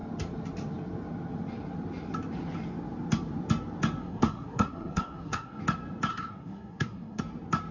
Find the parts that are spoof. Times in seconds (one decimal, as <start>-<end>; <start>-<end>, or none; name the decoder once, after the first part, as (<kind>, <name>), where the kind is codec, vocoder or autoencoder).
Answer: 4.0-5.6 (codec, SNAC); 6.1-7.2